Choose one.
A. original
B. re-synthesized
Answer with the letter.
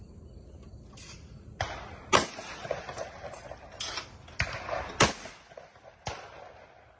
A